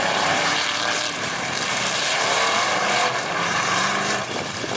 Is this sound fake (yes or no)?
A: yes